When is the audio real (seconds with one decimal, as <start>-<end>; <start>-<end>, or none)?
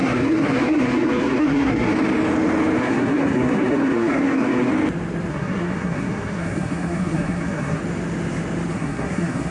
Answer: 1.9-2.8; 4.7-5.3; 7.8-8.7